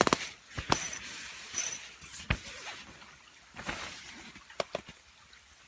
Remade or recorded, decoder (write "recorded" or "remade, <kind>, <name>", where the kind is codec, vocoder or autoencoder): recorded